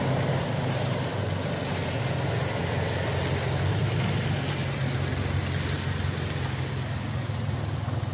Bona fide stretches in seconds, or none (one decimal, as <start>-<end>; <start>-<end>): 0.0-8.1